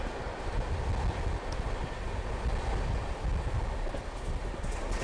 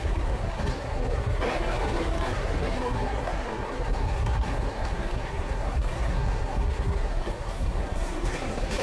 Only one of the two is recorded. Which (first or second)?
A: first